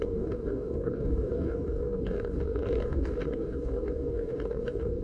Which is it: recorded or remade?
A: remade